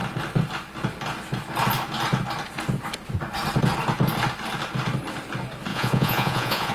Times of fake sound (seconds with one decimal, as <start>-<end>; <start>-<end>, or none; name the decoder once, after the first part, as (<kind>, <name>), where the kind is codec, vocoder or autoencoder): 5.7-6.7 (vocoder, Vocos)